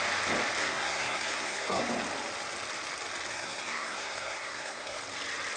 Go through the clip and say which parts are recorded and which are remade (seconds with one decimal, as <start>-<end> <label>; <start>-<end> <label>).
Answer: 0.0-0.6 recorded; 0.6-1.9 remade; 1.9-3.3 recorded; 3.3-5.0 remade; 5.0-5.6 recorded